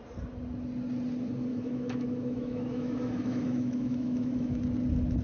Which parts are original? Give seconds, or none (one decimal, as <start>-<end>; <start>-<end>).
0.0-1.5; 4.6-5.2

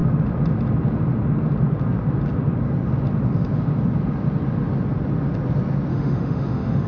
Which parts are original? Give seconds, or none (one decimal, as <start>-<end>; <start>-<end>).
0.0-5.9

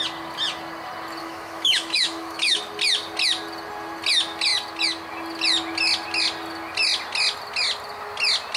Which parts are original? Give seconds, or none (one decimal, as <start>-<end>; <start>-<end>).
0.0-1.2; 2.6-8.6

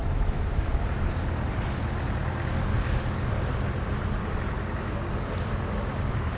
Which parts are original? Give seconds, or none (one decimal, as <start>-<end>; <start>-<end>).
0.7-6.4

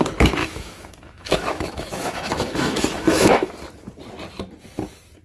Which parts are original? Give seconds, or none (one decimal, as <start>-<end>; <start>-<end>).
0.0-0.4; 3.5-5.2

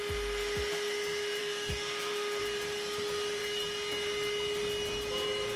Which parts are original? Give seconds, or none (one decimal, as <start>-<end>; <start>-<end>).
0.0-1.4; 2.4-5.6

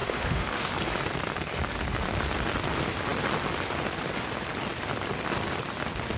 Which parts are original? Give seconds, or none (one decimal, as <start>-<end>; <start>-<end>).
0.7-6.2

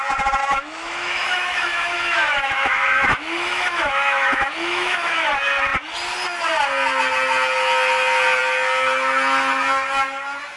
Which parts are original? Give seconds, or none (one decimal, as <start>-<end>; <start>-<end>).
0.0-0.4; 5.3-10.6